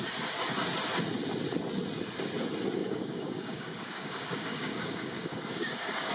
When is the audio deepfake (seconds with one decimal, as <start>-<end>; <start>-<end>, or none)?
2.8-6.1

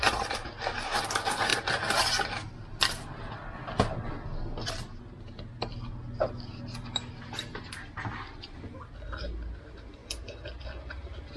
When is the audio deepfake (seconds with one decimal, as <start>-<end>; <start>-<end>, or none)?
none

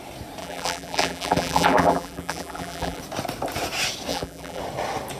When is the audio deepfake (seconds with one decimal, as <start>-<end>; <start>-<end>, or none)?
0.4-3.0; 4.1-4.6

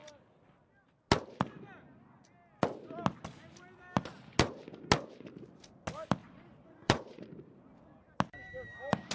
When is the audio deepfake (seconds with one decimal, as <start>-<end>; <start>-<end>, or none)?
6.2-7.2

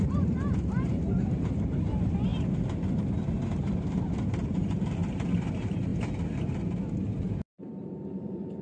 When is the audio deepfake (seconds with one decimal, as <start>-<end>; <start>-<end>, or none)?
0.0-2.3; 3.3-5.0; 5.5-5.9; 7.2-8.6

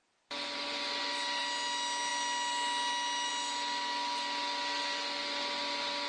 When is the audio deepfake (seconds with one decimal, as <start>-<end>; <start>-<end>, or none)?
none

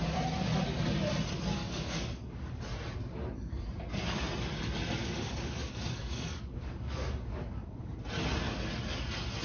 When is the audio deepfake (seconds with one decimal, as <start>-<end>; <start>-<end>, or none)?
1.6-2.6; 5.0-7.9